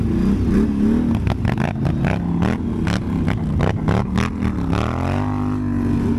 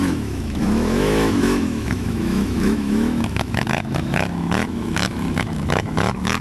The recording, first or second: first